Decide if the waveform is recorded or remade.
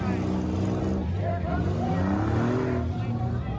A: recorded